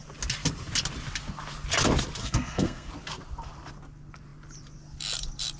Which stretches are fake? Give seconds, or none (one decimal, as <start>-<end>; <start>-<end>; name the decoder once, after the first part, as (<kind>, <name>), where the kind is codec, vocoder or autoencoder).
2.2-2.9 (codec, SNAC)